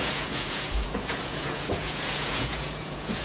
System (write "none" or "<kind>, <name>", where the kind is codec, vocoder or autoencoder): vocoder, Vocos